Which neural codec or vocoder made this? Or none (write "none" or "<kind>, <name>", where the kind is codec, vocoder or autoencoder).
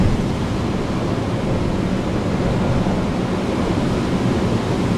none